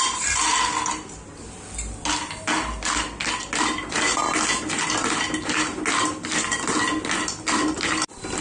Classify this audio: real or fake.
real